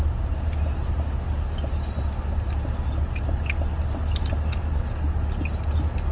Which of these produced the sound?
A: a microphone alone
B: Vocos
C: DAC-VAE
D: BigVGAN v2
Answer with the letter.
A